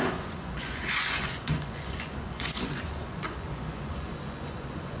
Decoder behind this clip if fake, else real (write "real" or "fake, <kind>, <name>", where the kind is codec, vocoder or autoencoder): fake, vocoder, Vocos